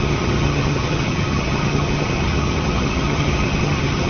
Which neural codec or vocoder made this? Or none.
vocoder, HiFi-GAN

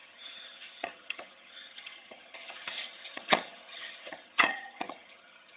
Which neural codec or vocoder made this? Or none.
vocoder, HiFi-GAN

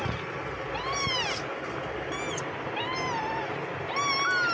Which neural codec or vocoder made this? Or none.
none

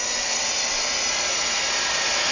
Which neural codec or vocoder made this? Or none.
none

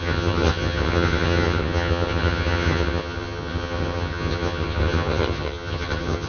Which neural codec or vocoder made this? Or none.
vocoder, HiFi-GAN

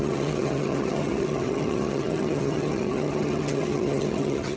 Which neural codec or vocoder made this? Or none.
vocoder, HiFi-GAN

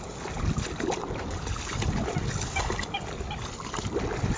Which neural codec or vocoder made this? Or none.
none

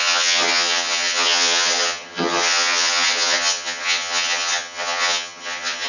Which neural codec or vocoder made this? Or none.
vocoder, HiFi-GAN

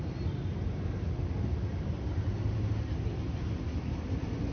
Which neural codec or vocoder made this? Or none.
none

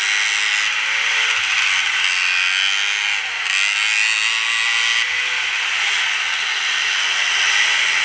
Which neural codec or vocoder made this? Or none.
none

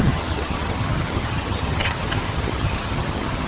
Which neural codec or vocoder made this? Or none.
vocoder, HiFi-GAN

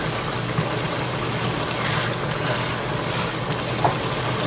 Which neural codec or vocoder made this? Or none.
none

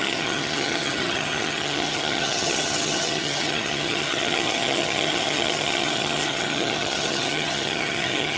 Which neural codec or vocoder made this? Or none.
vocoder, HiFi-GAN